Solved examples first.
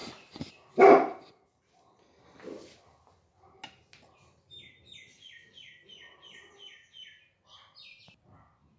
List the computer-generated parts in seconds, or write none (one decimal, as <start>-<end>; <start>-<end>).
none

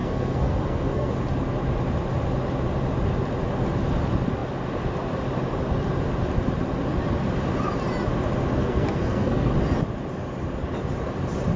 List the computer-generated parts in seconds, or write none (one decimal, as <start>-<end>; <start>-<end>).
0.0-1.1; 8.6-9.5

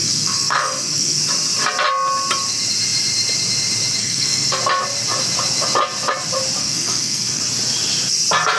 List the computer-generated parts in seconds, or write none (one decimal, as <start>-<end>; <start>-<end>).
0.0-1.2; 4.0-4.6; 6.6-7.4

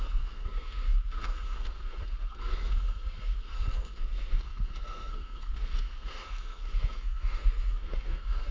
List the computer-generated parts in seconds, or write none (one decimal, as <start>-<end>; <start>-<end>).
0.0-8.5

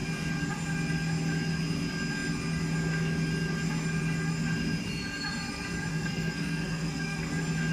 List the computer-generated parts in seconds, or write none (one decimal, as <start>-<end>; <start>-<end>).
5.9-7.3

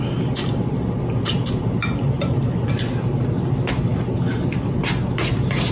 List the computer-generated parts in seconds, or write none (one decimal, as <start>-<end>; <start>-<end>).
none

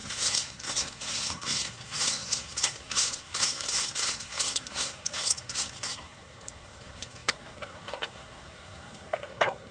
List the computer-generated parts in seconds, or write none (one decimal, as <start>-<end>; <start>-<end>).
0.0-9.7